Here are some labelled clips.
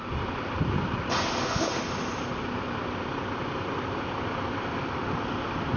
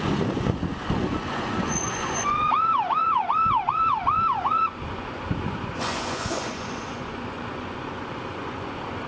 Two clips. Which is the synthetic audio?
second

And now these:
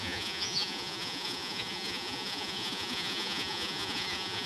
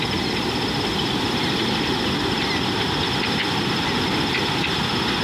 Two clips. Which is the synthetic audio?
first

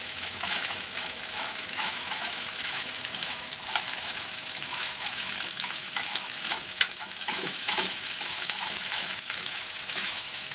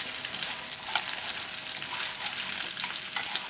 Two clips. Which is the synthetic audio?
first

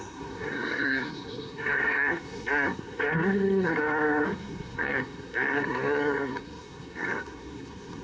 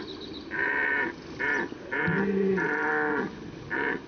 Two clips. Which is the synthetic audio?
first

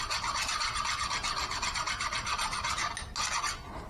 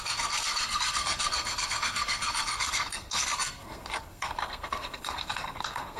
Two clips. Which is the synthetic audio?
second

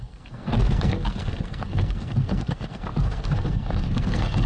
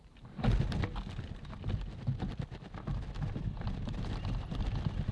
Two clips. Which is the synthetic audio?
first